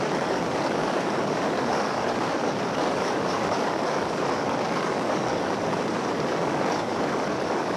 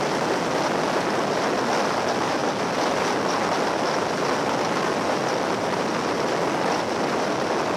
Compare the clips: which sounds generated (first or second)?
first